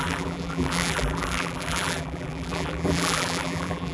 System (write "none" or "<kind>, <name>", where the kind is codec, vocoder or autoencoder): vocoder, BigVGAN v2